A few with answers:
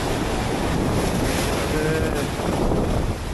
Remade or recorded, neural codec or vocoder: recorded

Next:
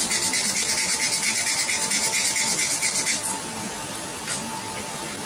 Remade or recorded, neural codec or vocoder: recorded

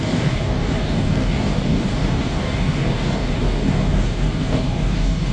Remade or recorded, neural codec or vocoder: remade, codec, DAC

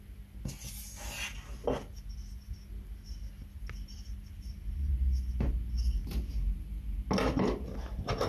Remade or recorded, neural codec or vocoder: recorded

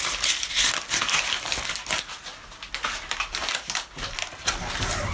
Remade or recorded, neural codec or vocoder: recorded